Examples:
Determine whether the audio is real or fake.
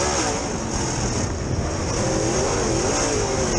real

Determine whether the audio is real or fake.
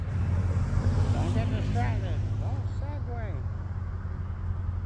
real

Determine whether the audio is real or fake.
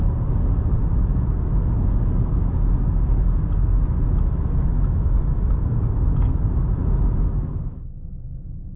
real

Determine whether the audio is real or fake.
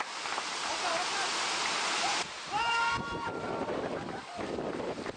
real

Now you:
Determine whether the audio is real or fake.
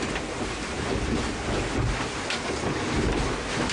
real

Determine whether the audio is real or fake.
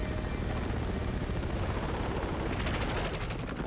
real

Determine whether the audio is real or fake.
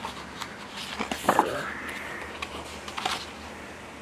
real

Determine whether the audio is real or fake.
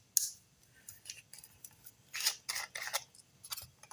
real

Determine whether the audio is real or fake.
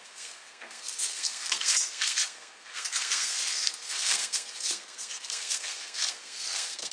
fake